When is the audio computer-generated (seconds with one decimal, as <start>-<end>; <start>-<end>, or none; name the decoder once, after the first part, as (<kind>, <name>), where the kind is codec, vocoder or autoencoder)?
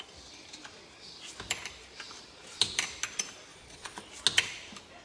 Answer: 3.5-4.1 (vocoder, Vocos)